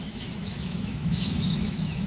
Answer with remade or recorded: remade